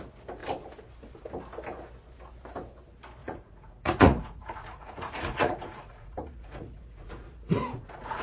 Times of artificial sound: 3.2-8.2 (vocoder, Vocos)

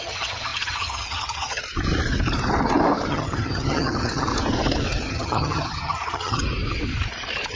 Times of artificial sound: 0.0-1.6 (vocoder, HiFi-GAN); 3.1-4.3; 5.1-6.4

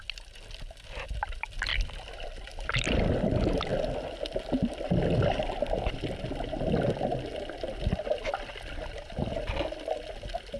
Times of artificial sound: none

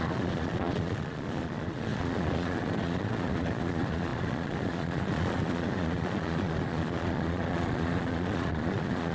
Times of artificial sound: 0.0-9.1 (vocoder, Vocos)

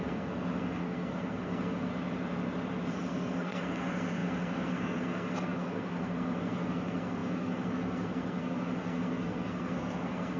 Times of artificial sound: 0.0-1.9 (codec, SNAC); 2.9-10.4